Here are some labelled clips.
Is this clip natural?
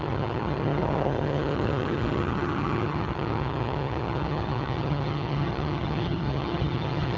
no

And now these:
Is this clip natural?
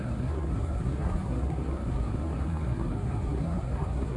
no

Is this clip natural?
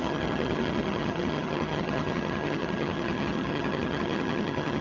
no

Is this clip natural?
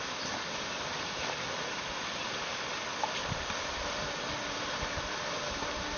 yes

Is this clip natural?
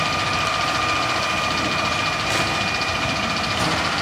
yes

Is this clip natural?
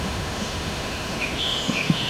no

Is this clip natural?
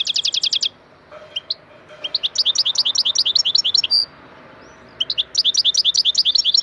yes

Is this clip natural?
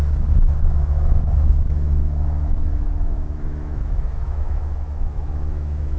no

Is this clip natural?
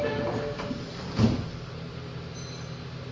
yes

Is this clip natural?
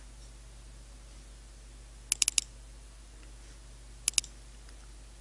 yes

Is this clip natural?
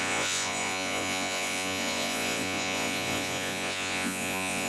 no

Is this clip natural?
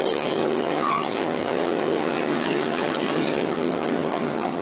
no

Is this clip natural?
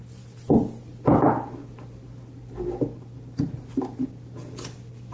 yes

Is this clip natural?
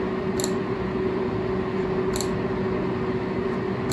yes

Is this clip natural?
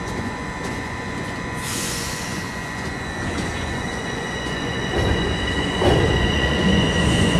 no